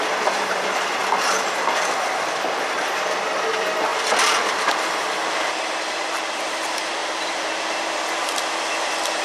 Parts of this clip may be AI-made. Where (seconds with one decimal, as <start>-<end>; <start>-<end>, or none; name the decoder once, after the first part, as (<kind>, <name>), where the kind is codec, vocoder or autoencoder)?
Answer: 0.0-9.2 (vocoder, BigVGAN v2)